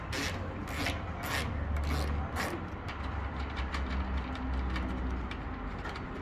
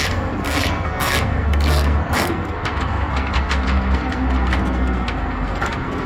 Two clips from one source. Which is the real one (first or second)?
first